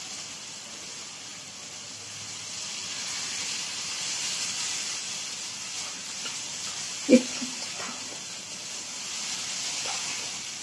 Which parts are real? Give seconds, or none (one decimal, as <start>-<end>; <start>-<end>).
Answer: 0.0-10.6